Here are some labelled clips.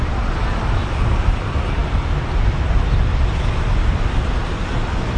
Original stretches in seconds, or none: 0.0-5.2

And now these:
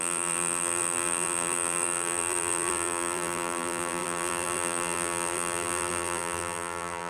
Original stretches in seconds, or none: none

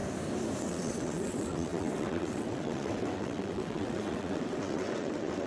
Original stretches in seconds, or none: 0.0-0.6

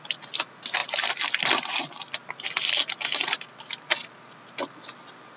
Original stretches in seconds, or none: 0.0-5.4

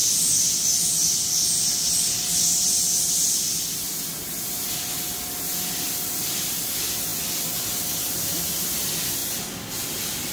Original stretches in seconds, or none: 0.0-10.3

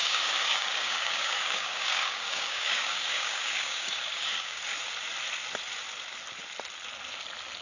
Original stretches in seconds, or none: 4.6-7.6

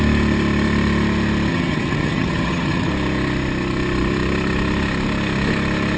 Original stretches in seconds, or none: 0.0-1.5; 2.9-6.0